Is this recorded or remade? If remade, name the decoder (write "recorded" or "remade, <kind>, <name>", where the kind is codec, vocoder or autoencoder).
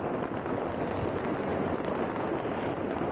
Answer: recorded